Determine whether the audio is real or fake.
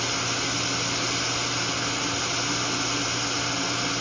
real